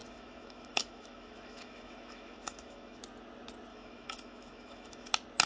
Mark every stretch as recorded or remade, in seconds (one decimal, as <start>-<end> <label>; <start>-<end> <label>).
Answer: 0.0-3.0 remade; 3.0-3.7 recorded; 3.7-5.1 remade; 5.1-5.5 recorded